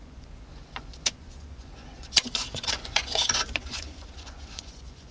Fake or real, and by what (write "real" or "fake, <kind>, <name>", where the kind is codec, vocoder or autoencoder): fake, vocoder, Vocos